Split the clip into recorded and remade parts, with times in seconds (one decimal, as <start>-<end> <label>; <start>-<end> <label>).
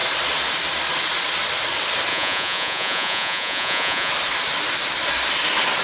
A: 0.0-2.1 recorded; 2.1-4.1 remade; 4.1-5.8 recorded